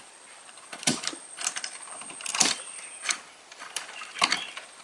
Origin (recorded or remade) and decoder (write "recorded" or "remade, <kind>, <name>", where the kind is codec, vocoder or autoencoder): remade, vocoder, BigVGAN v2